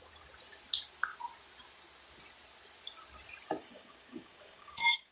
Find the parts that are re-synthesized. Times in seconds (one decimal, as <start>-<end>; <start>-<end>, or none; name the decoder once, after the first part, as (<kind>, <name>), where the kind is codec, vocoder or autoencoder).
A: 3.6-5.1 (codec, DAC)